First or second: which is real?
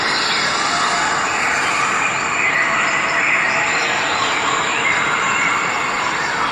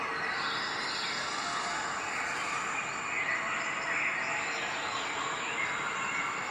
second